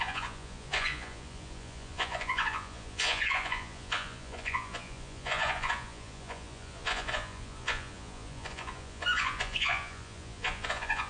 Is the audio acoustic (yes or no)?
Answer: no